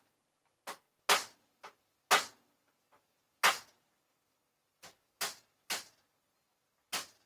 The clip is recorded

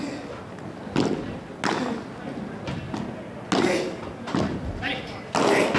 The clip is recorded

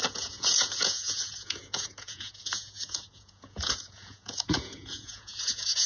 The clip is remade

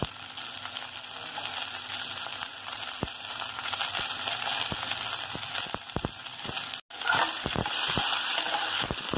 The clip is recorded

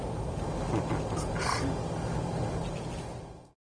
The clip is recorded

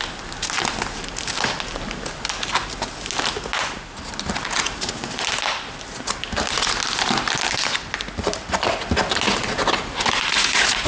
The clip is recorded